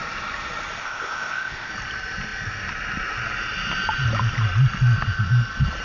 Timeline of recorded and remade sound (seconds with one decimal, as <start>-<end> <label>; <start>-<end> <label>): 0.0-0.8 recorded; 0.8-1.7 remade; 1.7-5.8 recorded

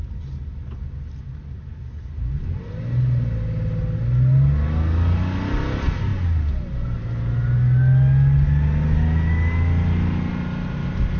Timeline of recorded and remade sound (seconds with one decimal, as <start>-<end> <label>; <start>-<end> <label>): 0.0-11.2 recorded